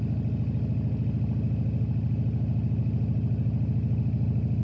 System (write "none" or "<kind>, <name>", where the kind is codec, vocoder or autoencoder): none